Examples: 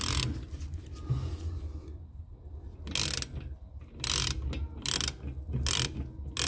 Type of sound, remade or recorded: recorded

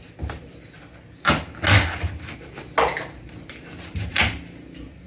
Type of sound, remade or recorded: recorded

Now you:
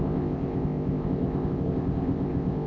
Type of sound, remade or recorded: remade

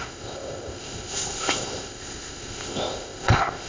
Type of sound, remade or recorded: remade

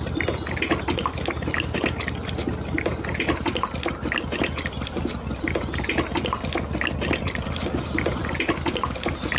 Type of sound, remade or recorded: recorded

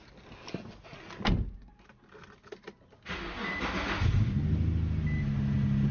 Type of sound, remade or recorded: recorded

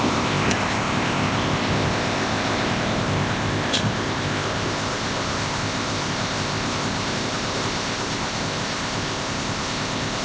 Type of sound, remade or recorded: remade